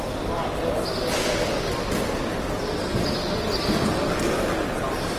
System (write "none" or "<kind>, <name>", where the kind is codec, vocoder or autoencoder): none